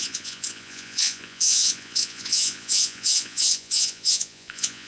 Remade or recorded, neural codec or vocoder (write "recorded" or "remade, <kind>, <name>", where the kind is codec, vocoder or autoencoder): remade, vocoder, Vocos